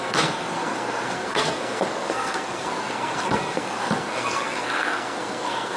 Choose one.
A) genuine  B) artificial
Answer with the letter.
B